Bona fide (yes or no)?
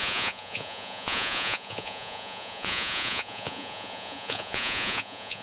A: no